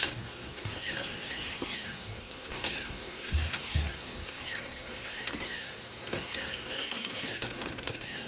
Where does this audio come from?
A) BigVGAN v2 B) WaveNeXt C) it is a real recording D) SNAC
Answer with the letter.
D